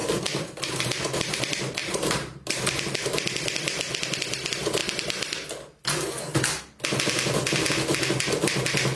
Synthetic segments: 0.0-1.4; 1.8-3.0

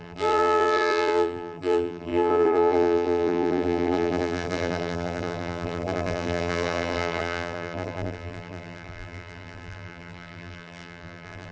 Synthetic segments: 0.0-11.5

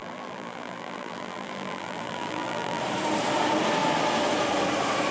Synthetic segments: 0.0-2.8

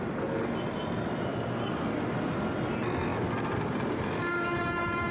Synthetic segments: none

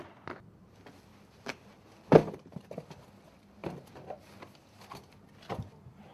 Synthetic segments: 1.1-1.8; 2.2-2.7

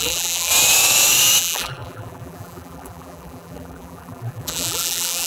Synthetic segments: 0.0-0.5; 1.4-5.3

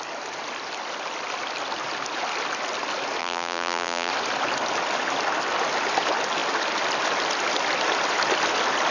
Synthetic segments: 3.2-4.1